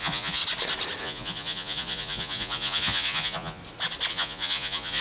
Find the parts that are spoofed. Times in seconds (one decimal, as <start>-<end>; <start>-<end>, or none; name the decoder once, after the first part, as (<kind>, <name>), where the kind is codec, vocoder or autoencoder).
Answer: 0.0-0.4 (vocoder, Vocos); 1.0-3.6; 4.1-5.0